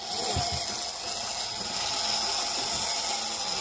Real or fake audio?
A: fake